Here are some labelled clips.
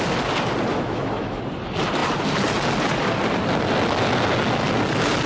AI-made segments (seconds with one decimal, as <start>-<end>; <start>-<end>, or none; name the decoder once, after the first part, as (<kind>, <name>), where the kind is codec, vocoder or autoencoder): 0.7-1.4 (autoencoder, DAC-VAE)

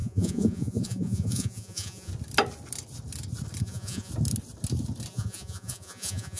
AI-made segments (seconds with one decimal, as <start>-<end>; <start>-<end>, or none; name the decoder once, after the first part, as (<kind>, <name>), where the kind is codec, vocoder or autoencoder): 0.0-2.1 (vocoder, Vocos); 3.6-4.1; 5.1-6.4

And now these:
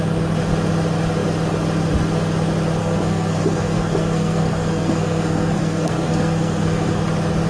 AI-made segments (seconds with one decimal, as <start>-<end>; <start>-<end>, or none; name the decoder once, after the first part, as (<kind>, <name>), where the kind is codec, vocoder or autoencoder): 2.8-7.0 (codec, SNAC)